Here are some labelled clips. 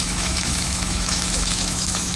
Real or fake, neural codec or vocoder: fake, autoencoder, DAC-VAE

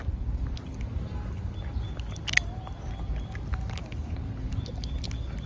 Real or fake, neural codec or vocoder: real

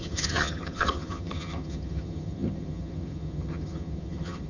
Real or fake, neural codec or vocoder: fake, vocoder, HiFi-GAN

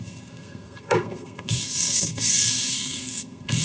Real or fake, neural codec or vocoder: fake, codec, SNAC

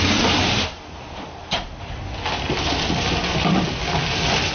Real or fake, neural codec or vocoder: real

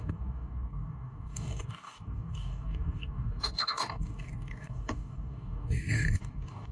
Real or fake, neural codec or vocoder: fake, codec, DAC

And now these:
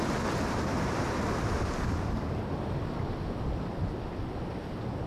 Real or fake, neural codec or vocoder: real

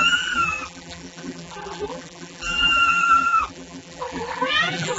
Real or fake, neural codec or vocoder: fake, vocoder, BigVGAN v2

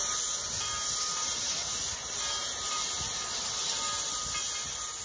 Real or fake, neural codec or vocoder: real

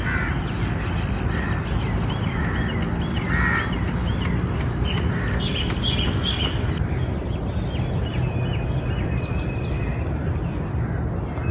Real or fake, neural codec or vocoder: real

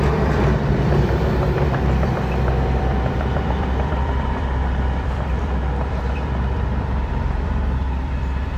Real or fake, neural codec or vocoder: fake, vocoder, BigVGAN v2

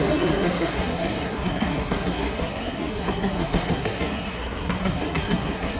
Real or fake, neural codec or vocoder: fake, codec, SNAC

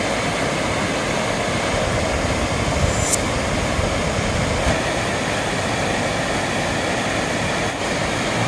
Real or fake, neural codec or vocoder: real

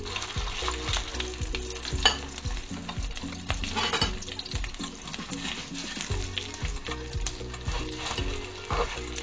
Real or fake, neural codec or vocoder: real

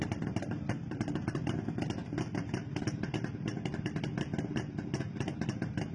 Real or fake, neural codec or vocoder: real